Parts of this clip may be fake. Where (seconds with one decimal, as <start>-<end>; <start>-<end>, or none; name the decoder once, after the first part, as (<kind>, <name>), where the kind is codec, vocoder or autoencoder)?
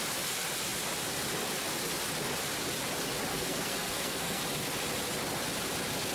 3.3-4.4 (codec, SNAC)